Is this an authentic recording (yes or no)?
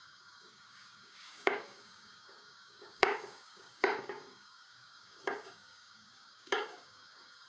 no